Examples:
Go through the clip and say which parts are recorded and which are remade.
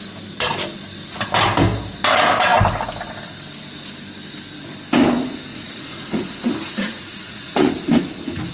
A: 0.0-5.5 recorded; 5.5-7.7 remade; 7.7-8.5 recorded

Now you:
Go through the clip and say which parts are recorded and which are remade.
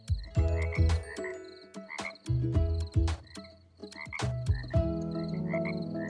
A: 0.0-6.1 recorded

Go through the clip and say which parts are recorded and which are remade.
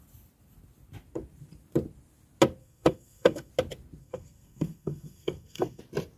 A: 0.0-2.6 recorded; 2.6-3.5 remade; 3.5-4.0 recorded; 4.0-5.8 remade; 5.8-6.2 recorded